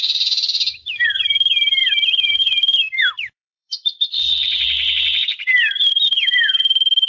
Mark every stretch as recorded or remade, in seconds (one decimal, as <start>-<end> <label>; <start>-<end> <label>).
0.0-7.1 remade